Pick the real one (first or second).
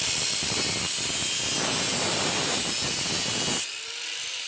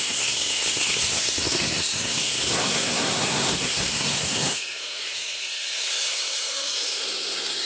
first